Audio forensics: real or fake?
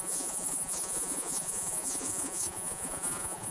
fake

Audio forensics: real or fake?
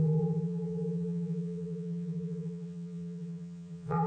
fake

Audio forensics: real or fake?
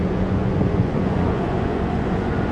fake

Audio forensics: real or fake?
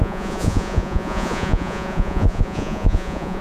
fake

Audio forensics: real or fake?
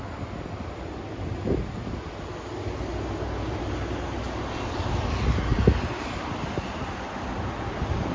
real